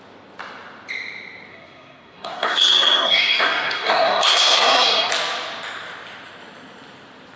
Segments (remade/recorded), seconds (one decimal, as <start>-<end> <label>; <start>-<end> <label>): 0.0-1.5 recorded; 1.5-5.1 remade; 5.1-7.4 recorded